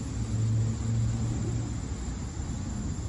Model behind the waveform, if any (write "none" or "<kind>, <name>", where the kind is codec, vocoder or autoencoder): none